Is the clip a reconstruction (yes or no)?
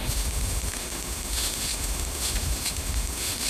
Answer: yes